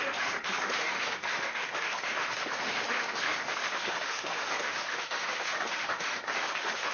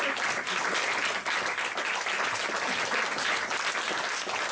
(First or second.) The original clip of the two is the second